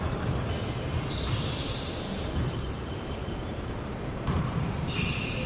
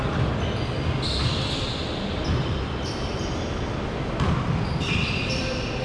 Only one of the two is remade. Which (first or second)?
first